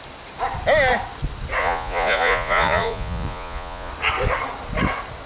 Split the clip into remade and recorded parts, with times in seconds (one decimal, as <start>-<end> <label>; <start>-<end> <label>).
0.0-1.6 recorded; 1.6-3.9 remade; 3.9-5.3 recorded